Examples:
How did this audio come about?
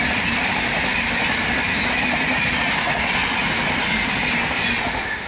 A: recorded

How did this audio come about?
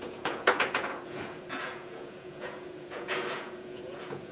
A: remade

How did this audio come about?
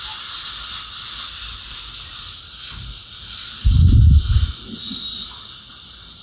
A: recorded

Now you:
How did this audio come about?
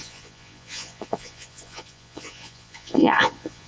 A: remade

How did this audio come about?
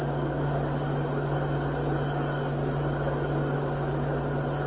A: recorded